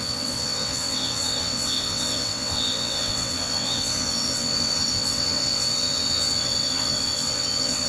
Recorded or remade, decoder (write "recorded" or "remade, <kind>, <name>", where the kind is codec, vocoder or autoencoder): remade, vocoder, WaveNeXt